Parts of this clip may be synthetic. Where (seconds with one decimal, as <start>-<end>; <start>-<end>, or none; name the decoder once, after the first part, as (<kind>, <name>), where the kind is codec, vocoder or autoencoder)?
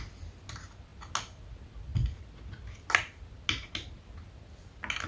none